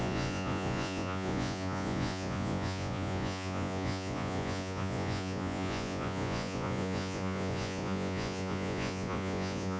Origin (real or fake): fake